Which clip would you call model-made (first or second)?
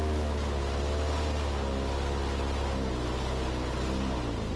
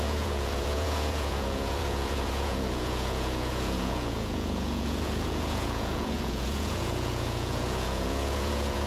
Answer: second